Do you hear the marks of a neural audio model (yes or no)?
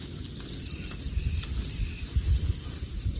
no